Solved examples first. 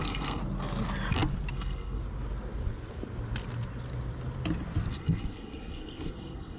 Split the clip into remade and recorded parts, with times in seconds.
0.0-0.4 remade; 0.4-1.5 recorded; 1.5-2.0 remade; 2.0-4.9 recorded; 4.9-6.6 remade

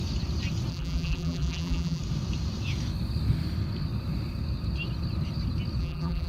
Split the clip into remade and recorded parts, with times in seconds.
0.0-0.7 recorded; 0.7-2.0 remade; 2.0-5.8 recorded; 5.8-6.3 remade

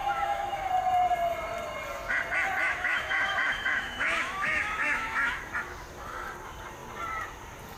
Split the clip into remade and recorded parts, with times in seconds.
0.0-0.7 remade; 0.7-2.6 recorded; 2.6-5.4 remade; 5.4-7.8 recorded

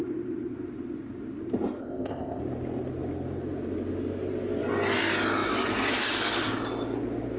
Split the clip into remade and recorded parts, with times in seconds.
0.0-1.8 recorded; 1.8-2.4 remade; 2.4-7.4 recorded

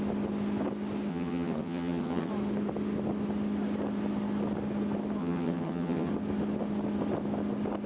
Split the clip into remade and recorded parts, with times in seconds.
0.0-1.1 recorded; 1.1-2.3 remade; 2.3-5.2 recorded; 5.2-6.1 remade; 6.1-7.9 recorded

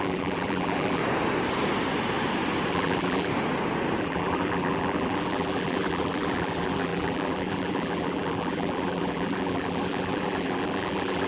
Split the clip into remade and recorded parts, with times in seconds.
0.0-1.0 remade; 1.0-2.7 recorded; 2.7-3.3 remade; 3.3-4.0 recorded; 4.0-11.3 remade

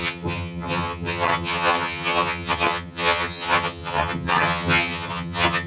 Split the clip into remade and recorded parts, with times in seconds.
0.0-5.7 remade

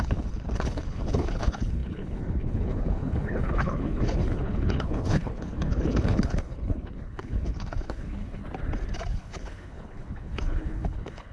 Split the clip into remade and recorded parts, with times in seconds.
0.0-8.4 remade; 8.4-9.1 recorded; 9.1-11.3 remade